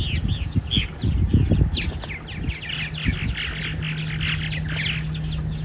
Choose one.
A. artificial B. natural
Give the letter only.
B